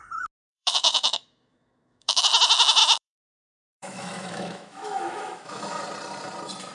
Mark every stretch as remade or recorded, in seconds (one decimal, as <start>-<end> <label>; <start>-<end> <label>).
0.0-0.4 recorded; 0.4-2.2 remade; 2.2-2.8 recorded; 2.8-5.8 remade; 5.8-6.7 recorded